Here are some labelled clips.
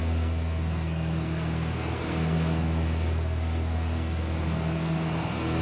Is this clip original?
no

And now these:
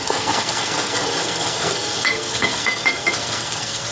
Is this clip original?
no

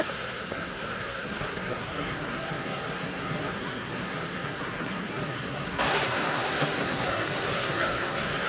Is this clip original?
no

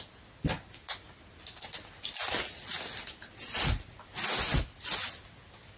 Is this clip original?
yes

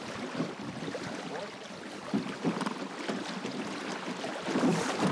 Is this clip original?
yes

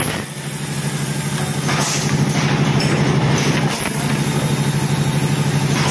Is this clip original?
yes